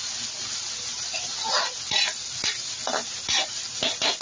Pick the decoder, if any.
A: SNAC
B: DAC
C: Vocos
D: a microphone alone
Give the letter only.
D